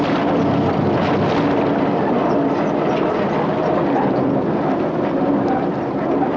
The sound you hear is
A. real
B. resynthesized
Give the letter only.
A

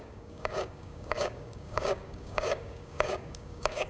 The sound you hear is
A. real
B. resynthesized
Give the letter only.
B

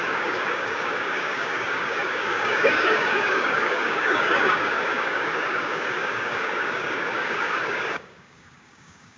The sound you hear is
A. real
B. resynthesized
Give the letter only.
B